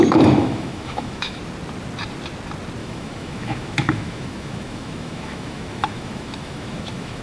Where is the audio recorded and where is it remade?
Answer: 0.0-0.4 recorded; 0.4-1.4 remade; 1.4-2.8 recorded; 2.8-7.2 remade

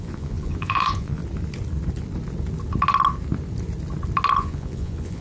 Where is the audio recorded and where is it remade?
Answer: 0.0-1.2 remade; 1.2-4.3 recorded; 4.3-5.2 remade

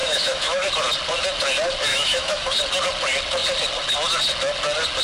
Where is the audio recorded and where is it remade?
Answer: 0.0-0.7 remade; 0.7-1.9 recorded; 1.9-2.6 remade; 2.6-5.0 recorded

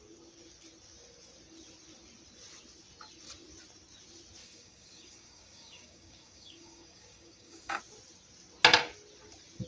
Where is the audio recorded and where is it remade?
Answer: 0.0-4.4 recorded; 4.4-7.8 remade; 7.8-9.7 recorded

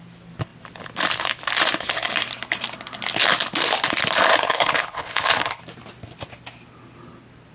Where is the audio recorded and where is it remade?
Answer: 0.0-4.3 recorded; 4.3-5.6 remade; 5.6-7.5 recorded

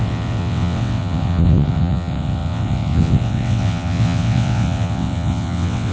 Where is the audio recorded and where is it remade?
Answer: 0.0-5.9 remade

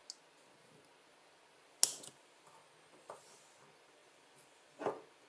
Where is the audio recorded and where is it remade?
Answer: 0.0-2.6 recorded; 2.6-3.2 remade; 3.2-5.3 recorded

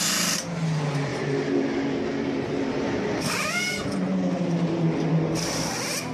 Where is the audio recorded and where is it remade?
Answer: 0.0-1.1 recorded; 1.1-3.5 remade; 3.5-4.0 recorded; 4.0-4.8 remade; 4.8-6.1 recorded